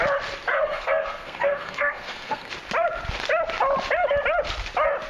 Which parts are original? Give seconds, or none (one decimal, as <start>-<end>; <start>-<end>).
0.0-0.5; 2.5-5.1